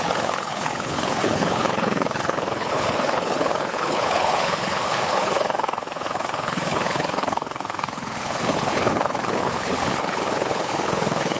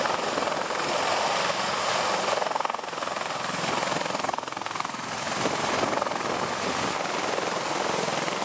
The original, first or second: second